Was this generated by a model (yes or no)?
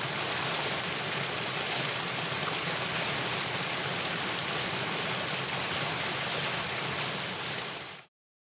no